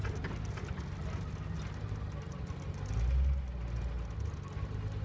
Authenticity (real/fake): real